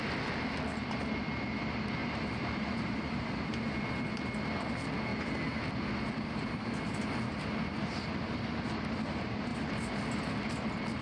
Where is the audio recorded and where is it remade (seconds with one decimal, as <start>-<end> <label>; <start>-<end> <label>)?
0.0-2.0 recorded; 2.0-3.5 remade; 3.5-11.0 recorded